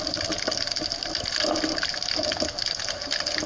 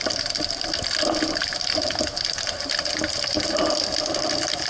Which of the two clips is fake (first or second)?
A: second